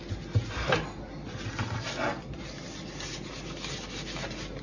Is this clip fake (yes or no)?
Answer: no